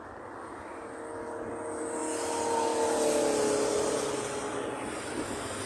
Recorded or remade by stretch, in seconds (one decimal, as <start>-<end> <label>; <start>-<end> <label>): 0.0-5.7 recorded